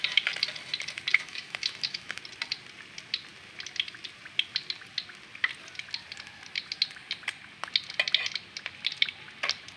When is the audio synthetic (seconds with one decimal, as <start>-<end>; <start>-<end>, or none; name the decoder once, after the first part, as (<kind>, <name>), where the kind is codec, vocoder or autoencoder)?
1.1-2.2 (autoencoder, DAC-VAE)